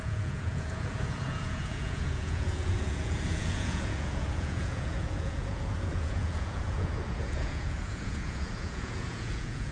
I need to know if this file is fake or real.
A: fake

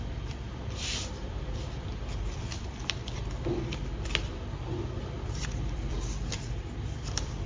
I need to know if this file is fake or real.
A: fake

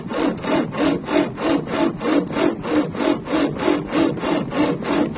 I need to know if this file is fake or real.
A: real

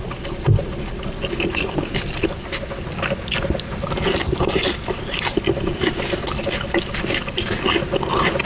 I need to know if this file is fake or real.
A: real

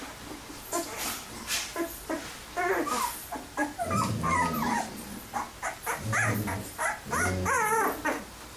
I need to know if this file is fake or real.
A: real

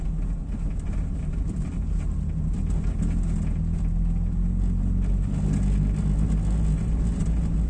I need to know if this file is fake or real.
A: real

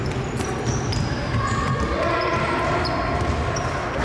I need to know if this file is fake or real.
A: real